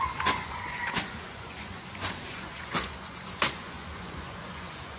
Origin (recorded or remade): remade